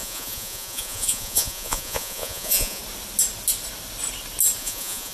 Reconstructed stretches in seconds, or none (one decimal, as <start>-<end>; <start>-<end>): 0.0-2.8; 4.6-5.1